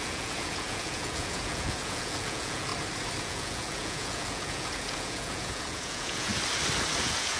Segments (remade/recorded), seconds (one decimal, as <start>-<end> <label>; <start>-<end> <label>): 0.0-2.7 remade; 2.7-3.2 recorded; 3.2-6.3 remade; 6.3-7.0 recorded; 7.0-7.4 remade